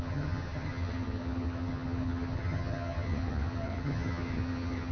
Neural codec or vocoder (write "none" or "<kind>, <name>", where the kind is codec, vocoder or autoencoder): vocoder, HiFi-GAN